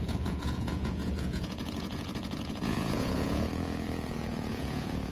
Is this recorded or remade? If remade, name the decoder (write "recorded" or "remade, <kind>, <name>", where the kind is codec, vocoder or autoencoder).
remade, vocoder, Vocos